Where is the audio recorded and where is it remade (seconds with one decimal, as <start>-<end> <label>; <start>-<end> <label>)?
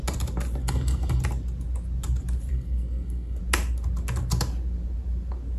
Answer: 0.0-0.6 recorded; 0.6-1.2 remade; 1.2-2.5 recorded; 2.5-3.4 remade; 3.4-5.6 recorded